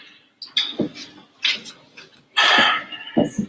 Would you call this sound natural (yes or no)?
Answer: yes